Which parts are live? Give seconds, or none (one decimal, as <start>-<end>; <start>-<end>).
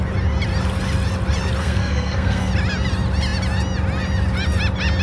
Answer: 0.0-1.6; 2.5-5.0